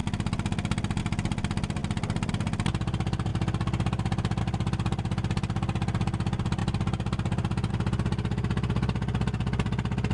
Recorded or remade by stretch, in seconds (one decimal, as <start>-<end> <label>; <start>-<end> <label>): 0.0-10.1 recorded